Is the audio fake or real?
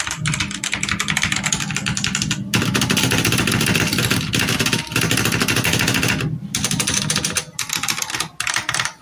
real